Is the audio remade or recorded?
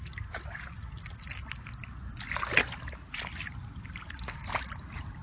recorded